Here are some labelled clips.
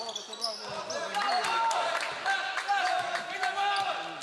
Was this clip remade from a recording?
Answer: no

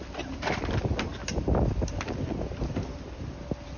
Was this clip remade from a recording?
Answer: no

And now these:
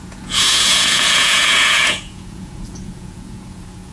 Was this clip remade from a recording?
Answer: yes